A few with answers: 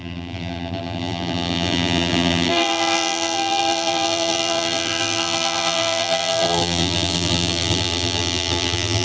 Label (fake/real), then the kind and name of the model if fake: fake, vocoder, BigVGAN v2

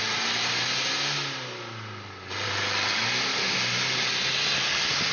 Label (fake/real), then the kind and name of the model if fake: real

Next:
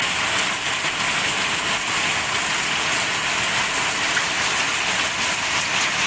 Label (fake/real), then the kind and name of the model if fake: real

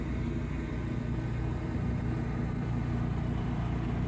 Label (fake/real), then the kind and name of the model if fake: real